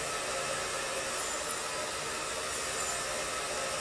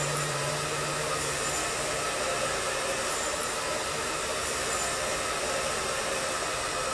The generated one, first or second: second